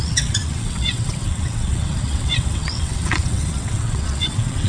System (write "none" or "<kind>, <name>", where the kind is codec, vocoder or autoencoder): vocoder, WaveNeXt